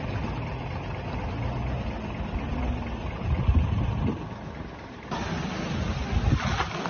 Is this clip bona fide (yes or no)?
yes